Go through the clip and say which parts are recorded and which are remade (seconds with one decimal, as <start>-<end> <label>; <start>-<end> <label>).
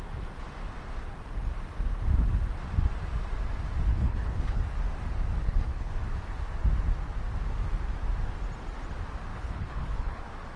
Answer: 0.0-3.9 recorded; 3.9-4.6 remade; 4.6-5.4 recorded; 5.4-5.9 remade; 5.9-9.3 recorded; 9.3-10.2 remade; 10.2-10.6 recorded